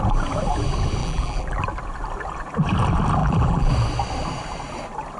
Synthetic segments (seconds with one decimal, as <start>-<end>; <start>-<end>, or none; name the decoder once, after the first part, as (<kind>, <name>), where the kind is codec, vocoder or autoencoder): 1.0-1.6 (vocoder, BigVGAN v2); 3.2-3.7